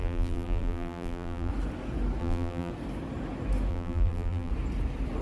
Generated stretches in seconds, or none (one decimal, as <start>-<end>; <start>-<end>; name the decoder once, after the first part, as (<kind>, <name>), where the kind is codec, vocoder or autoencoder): 0.0-1.5 (vocoder, BigVGAN v2); 2.2-2.7; 3.7-4.5